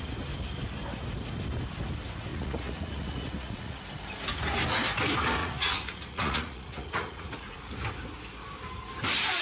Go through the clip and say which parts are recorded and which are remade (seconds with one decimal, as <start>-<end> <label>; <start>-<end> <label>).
0.0-2.3 recorded; 2.3-3.8 remade; 3.8-5.4 recorded; 5.4-7.6 remade; 7.6-9.4 recorded

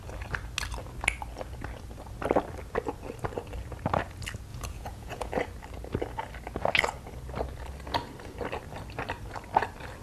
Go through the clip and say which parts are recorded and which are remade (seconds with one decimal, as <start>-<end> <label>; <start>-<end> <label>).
0.0-4.5 recorded; 4.5-5.4 remade; 5.4-10.0 recorded